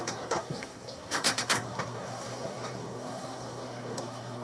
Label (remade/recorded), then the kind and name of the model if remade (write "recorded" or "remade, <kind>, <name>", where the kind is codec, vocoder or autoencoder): remade, codec, SNAC